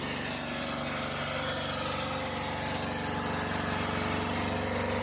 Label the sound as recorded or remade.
recorded